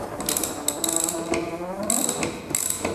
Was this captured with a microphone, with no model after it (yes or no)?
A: yes